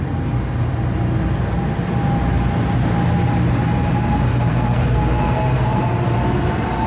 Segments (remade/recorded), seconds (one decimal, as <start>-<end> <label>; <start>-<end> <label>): 0.0-4.3 recorded; 4.3-5.8 remade; 5.8-6.9 recorded